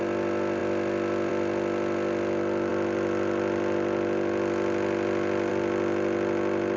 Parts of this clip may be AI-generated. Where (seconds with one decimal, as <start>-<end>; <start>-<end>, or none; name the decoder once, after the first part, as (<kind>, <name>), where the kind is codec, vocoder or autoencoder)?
none